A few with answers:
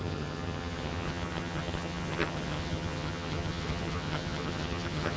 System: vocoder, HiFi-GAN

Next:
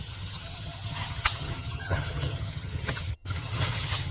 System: vocoder, HiFi-GAN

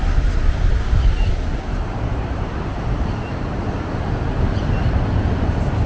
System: none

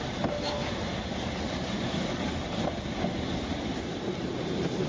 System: none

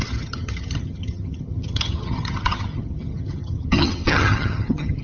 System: vocoder, HiFi-GAN